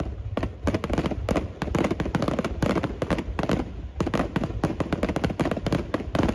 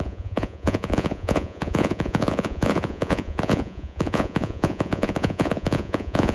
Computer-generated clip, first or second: second